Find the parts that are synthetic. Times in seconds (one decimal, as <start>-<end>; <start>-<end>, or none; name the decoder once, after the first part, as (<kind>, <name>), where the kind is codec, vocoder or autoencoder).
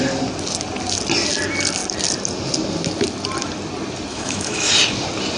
4.1-4.7 (autoencoder, DAC-VAE)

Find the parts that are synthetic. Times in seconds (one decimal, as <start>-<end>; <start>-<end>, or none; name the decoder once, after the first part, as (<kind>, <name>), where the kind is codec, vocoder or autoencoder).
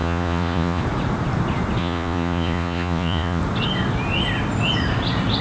0.0-0.8 (vocoder, Vocos); 1.8-3.4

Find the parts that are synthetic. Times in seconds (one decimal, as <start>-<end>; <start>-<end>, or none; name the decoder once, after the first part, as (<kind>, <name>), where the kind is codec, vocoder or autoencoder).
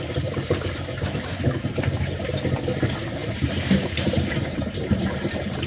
1.6-2.3 (vocoder, BigVGAN v2); 3.2-5.7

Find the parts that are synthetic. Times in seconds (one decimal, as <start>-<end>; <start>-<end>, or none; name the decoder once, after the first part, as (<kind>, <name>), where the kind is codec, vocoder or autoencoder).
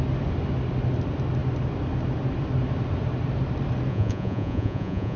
3.9-5.2 (vocoder, Vocos)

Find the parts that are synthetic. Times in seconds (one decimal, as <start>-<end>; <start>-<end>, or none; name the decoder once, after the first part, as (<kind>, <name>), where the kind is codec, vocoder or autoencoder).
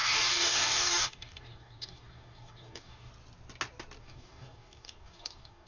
0.0-3.1 (codec, DAC); 4.0-5.7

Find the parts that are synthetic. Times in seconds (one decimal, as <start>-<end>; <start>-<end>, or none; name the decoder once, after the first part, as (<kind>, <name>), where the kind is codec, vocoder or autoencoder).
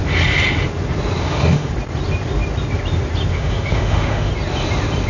1.2-1.7 (autoencoder, DAC-VAE); 3.3-4.3